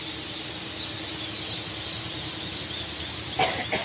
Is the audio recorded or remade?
recorded